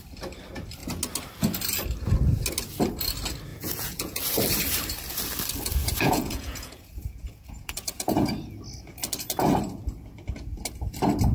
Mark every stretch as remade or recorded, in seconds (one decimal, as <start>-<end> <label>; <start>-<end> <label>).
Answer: 0.0-3.5 recorded; 3.5-4.2 remade; 4.2-5.8 recorded; 5.8-8.3 remade; 8.3-11.3 recorded